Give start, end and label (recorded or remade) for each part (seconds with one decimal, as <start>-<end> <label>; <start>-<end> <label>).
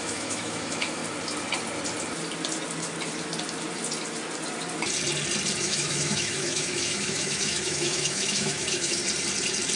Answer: 0.0-1.0 remade; 1.0-5.6 recorded; 5.6-9.0 remade; 9.0-9.8 recorded